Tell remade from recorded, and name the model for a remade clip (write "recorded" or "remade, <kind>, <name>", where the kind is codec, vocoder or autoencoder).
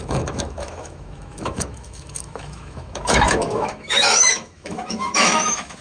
remade, autoencoder, DAC-VAE